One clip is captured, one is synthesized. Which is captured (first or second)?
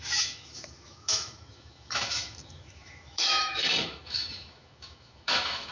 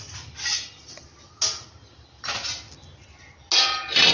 second